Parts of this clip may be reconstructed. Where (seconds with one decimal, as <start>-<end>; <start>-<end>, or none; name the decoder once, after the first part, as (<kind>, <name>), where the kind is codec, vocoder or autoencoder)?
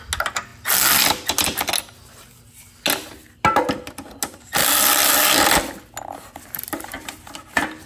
none